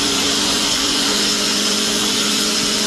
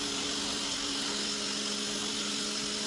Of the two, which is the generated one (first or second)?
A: first